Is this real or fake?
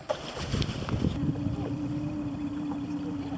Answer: real